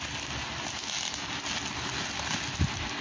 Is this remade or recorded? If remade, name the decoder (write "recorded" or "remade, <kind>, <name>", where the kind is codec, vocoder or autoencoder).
recorded